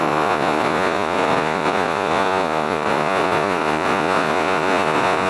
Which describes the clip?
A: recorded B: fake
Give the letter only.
B